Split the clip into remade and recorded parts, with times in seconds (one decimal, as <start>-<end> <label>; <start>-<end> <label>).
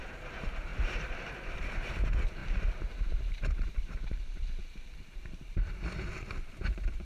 0.0-7.0 remade